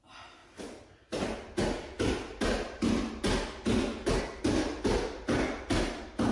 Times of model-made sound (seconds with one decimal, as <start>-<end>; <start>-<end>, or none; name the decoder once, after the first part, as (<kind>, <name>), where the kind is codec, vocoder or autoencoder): none